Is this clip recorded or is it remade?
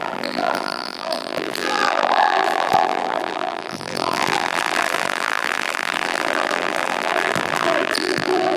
remade